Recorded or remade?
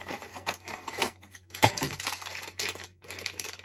remade